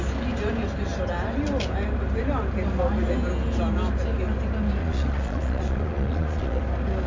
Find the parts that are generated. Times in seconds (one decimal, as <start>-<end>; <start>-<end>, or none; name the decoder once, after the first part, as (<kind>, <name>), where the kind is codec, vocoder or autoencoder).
4.8-6.6 (vocoder, Vocos)